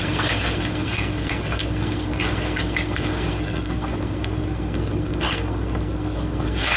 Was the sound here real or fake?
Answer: fake